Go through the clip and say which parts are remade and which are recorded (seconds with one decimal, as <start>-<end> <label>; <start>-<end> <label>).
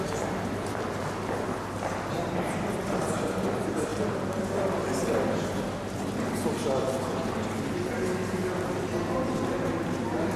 0.0-10.4 recorded